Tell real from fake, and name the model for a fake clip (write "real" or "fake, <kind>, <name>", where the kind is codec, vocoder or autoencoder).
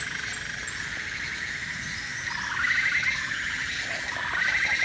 real